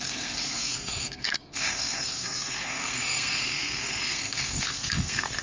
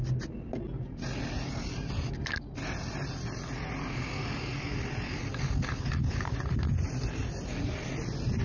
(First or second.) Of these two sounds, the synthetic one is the first